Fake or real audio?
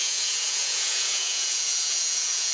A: fake